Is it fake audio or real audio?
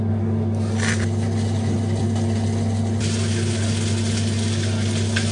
real